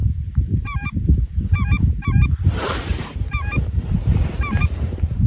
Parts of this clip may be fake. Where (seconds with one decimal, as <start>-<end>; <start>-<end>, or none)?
0.0-3.2; 4.6-5.3